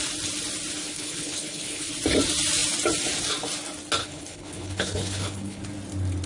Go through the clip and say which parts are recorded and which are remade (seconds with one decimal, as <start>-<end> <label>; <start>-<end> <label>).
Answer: 0.0-0.8 recorded; 0.8-1.9 remade; 1.9-4.0 recorded; 4.0-5.6 remade; 5.6-6.3 recorded